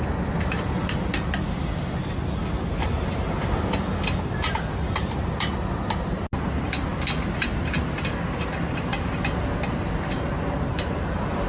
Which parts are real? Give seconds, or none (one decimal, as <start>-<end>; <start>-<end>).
0.0-11.5